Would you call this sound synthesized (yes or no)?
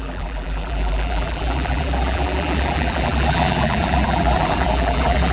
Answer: yes